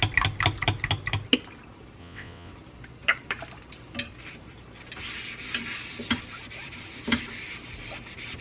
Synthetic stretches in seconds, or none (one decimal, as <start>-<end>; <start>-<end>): 2.0-2.5